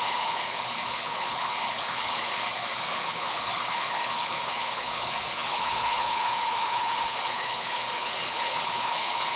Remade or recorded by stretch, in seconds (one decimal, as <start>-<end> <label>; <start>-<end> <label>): 0.0-9.4 remade